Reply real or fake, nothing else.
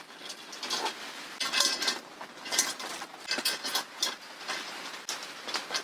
real